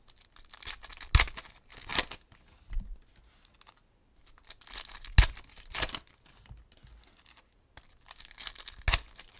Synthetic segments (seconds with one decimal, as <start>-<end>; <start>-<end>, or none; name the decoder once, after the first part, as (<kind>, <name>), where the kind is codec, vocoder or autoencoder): none